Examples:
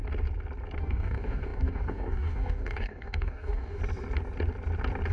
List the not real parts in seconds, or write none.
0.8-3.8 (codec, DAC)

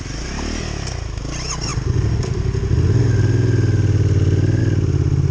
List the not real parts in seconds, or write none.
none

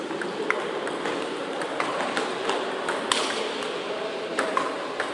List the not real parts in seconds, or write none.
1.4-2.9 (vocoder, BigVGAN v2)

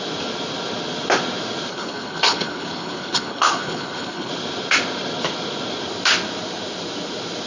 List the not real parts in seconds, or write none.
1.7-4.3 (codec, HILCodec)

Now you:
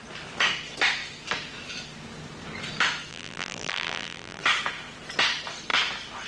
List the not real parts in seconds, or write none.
3.1-4.4 (vocoder, BigVGAN v2)

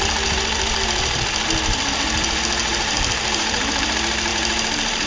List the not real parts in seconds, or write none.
2.6-3.9 (vocoder, BigVGAN v2); 4.3-5.1

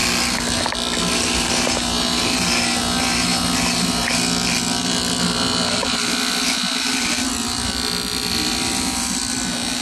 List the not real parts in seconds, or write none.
none